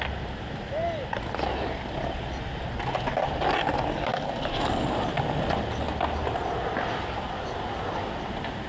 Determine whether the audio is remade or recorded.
recorded